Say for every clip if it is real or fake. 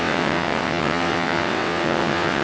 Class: fake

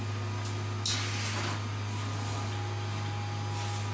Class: real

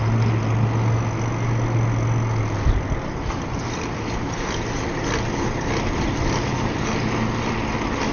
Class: real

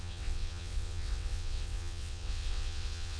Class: fake